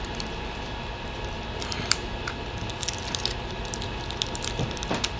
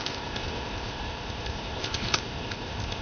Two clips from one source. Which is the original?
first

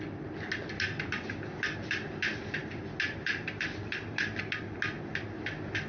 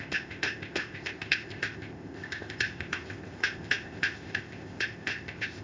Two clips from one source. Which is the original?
first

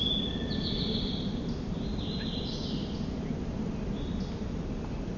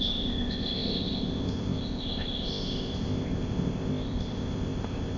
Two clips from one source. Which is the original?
first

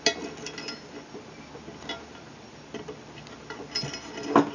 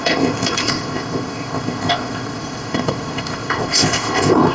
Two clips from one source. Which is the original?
first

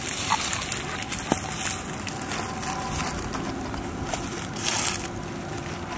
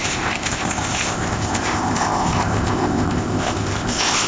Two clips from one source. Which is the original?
first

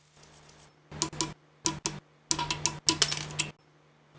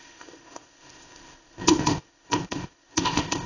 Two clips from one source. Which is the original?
first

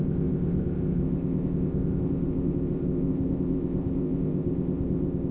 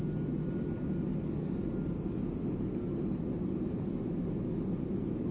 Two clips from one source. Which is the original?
second